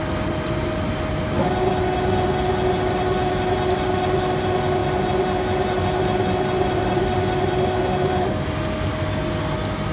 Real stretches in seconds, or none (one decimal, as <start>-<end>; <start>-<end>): 0.0-9.9